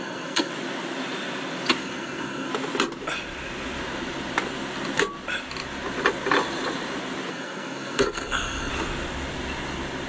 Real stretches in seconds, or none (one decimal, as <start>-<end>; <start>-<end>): 0.5-1.8; 2.5-7.3; 8.7-10.1